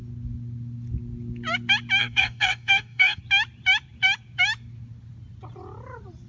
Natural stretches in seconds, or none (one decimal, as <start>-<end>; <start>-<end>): 0.0-2.0; 3.2-6.3